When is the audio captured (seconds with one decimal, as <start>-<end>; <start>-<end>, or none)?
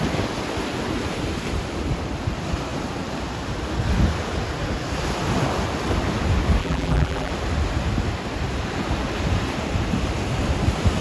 0.0-6.6; 7.3-11.0